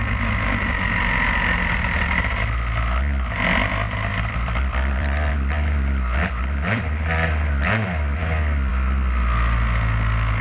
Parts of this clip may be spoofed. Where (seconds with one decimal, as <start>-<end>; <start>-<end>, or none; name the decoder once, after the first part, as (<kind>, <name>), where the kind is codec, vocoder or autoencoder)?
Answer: 4.1-5.3 (vocoder, BigVGAN v2)